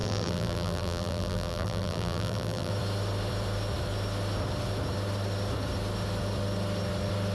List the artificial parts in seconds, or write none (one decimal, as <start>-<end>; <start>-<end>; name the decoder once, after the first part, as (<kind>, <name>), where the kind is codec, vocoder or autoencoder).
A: 0.0-2.7 (vocoder, BigVGAN v2)